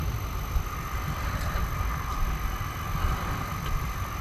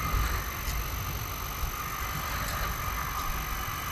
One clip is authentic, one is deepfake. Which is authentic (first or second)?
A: second